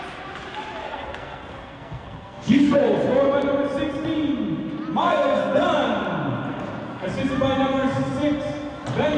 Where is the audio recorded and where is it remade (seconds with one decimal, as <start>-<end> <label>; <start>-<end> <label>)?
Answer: 0.0-0.8 recorded; 0.8-2.8 remade; 2.8-5.0 recorded; 5.0-5.6 remade; 5.6-6.5 recorded; 6.5-7.1 remade; 7.1-9.2 recorded